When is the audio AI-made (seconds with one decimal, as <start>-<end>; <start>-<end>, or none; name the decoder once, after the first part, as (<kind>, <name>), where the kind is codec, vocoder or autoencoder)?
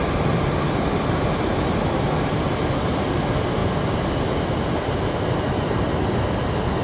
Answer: none